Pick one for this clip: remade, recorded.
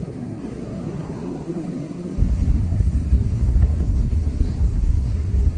remade